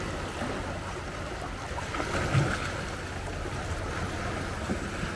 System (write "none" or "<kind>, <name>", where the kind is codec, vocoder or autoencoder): none